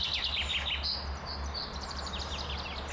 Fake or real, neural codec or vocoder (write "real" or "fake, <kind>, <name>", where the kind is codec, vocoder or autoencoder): real